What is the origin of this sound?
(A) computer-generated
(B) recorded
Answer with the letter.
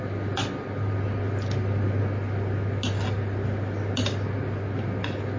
B